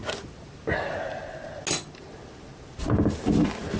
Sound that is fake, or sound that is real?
real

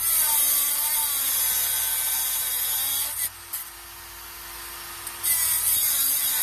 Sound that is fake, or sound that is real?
real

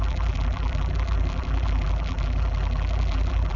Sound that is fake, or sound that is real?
fake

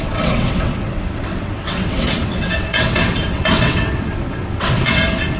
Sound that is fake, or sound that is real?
fake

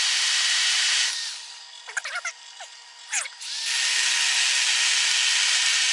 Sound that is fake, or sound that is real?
real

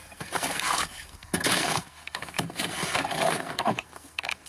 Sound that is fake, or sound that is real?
fake